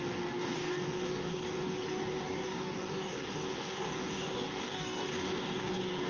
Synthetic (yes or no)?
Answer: yes